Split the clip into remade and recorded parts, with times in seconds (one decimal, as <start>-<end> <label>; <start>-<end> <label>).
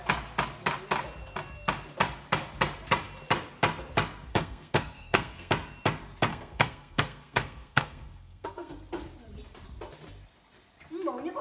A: 0.0-4.3 recorded; 4.3-5.5 remade; 5.5-6.3 recorded; 6.3-8.7 remade; 8.7-11.4 recorded